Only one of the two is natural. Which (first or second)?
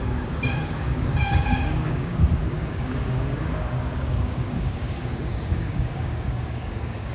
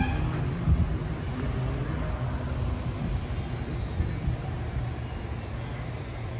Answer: second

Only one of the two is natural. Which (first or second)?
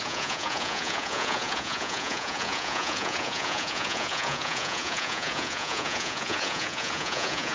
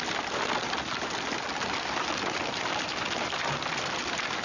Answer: second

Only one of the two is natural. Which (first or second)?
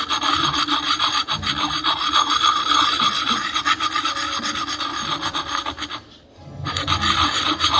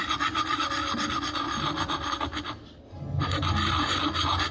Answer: second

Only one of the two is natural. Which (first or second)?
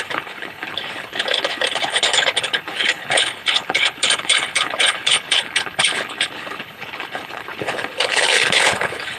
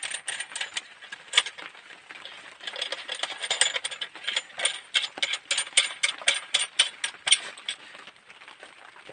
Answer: second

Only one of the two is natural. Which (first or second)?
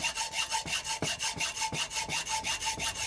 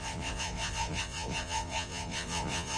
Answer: first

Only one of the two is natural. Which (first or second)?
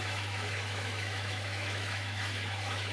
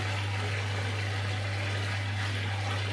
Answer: second